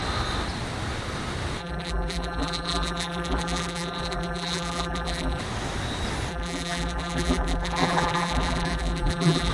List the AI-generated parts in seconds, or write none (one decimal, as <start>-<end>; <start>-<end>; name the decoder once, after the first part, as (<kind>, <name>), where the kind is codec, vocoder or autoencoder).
1.6-5.4 (vocoder, BigVGAN v2); 6.3-9.5